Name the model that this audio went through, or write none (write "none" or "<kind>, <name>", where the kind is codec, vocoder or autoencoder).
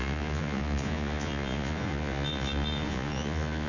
vocoder, Vocos